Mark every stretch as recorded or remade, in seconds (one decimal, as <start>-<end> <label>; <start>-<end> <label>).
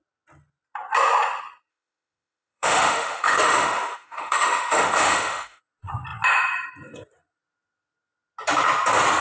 0.0-1.7 recorded; 1.7-5.6 remade; 5.6-9.2 recorded